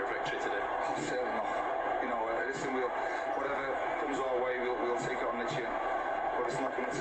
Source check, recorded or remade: recorded